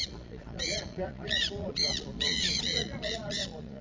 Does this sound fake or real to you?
fake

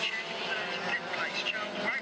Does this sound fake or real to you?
real